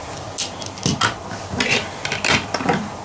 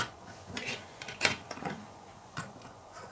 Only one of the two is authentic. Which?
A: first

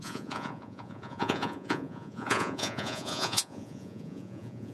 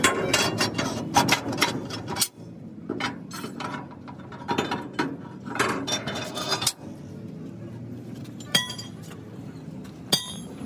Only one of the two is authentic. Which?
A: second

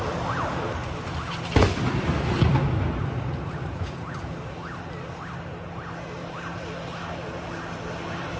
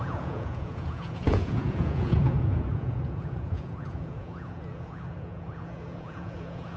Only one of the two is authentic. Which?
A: first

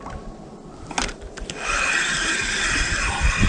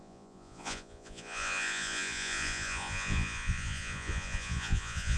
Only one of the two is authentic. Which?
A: first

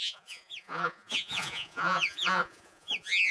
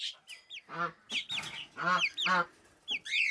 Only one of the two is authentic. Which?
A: second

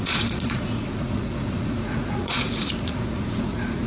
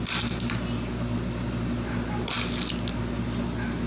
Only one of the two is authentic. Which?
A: second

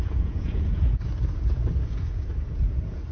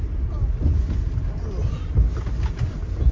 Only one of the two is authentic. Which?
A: second